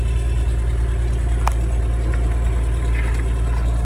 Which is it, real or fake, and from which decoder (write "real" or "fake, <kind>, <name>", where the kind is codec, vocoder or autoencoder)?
real